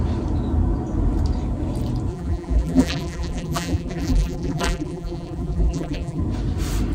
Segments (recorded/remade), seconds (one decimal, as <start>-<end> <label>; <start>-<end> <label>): 0.0-2.1 recorded; 2.1-6.2 remade; 6.2-6.9 recorded